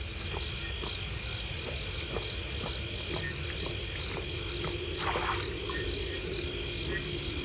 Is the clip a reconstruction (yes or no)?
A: no